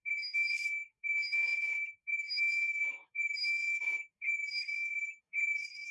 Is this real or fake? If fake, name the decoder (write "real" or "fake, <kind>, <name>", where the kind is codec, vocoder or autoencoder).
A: fake, autoencoder, DAC-VAE